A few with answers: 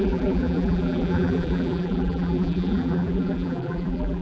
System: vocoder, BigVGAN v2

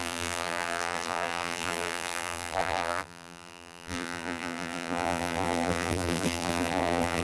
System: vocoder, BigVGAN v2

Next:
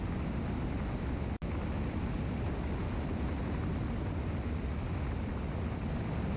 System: none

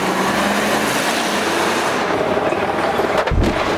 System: vocoder, BigVGAN v2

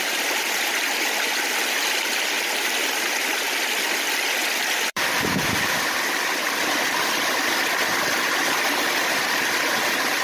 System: vocoder, BigVGAN v2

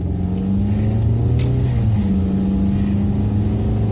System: none